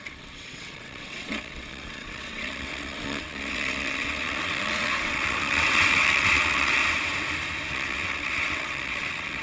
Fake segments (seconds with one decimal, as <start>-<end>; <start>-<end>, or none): 0.0-6.8; 7.7-9.4